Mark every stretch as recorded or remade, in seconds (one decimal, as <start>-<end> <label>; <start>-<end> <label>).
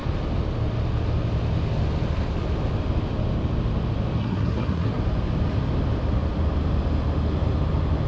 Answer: 0.0-4.2 recorded; 4.2-5.0 remade; 5.0-8.1 recorded